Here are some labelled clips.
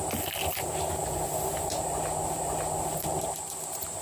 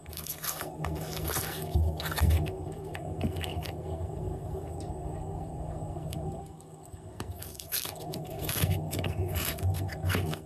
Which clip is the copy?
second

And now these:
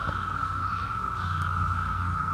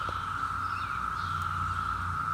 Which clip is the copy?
first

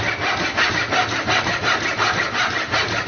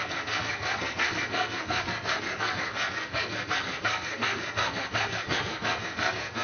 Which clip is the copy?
second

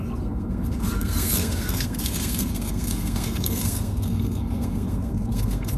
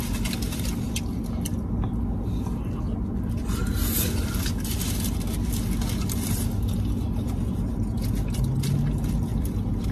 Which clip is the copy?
first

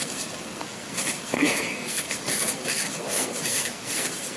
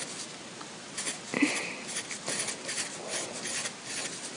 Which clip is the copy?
first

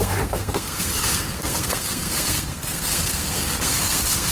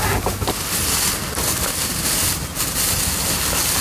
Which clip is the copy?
first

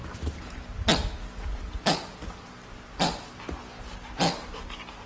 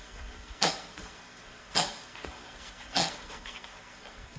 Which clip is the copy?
second